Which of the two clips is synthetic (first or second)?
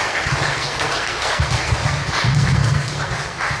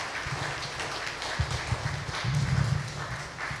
first